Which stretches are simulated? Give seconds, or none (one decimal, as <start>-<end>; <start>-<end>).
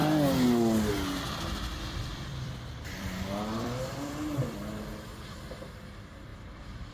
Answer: 1.7-5.5